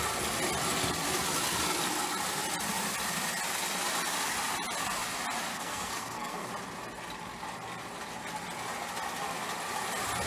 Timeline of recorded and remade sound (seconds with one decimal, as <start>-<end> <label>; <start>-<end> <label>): 0.0-5.5 recorded; 5.5-6.5 remade; 6.5-10.3 recorded